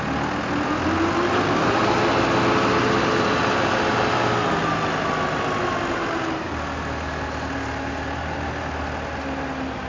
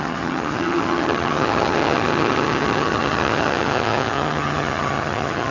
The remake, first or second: second